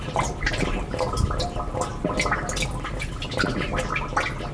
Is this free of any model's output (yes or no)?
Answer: yes